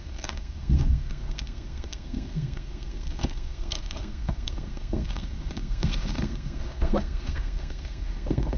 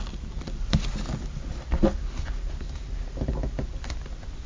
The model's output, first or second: first